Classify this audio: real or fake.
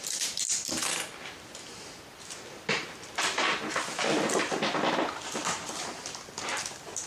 real